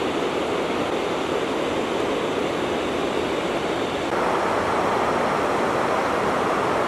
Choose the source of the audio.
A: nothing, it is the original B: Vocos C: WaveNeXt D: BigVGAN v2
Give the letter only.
A